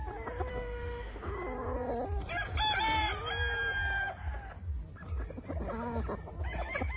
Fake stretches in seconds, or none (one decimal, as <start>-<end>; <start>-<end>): 0.5-1.3